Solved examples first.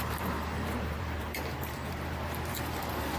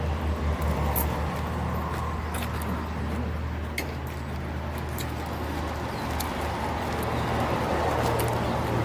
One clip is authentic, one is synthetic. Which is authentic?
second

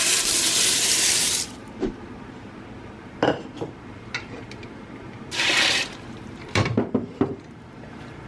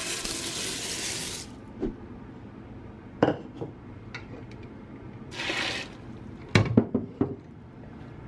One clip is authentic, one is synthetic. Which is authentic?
second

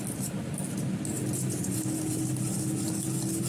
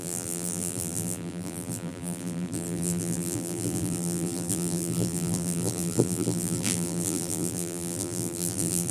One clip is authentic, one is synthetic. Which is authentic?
first